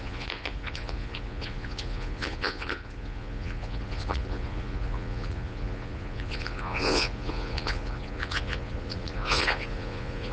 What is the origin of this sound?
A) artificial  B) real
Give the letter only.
A